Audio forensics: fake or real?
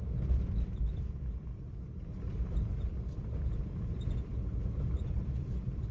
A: fake